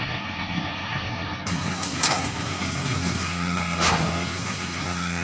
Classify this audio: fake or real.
fake